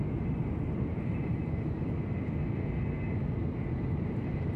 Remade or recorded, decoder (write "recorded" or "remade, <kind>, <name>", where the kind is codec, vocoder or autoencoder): recorded